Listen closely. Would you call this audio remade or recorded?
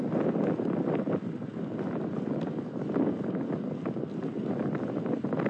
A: recorded